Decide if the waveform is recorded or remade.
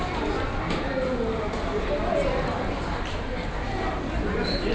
recorded